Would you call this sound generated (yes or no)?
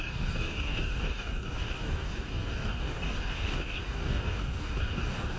yes